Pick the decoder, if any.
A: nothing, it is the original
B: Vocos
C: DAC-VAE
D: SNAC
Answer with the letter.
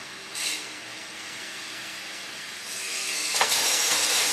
D